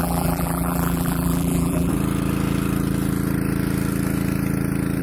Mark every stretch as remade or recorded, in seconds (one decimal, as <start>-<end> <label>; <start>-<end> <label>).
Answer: 0.0-1.9 remade; 1.9-5.0 recorded

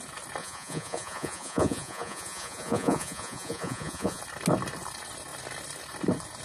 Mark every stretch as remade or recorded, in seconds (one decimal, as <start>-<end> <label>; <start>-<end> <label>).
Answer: 0.0-0.4 recorded; 0.4-4.2 remade; 4.2-6.4 recorded

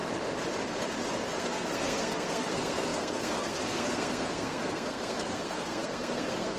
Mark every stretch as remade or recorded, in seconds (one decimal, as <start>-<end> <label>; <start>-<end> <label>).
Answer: 0.0-1.3 recorded; 1.3-6.6 remade

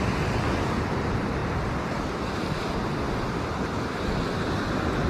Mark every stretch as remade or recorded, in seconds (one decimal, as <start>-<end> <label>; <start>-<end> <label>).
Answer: 0.0-5.1 recorded